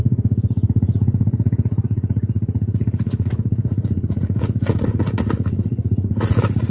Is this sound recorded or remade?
remade